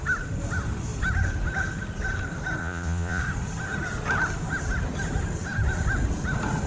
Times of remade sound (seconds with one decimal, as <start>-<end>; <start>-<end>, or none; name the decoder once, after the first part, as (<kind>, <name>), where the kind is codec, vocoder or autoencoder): 2.6-3.2 (vocoder, Vocos)